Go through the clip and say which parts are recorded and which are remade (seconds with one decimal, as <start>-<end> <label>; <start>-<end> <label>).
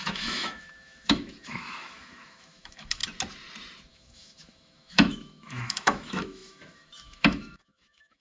0.0-3.0 remade; 3.0-3.9 recorded; 3.9-8.2 remade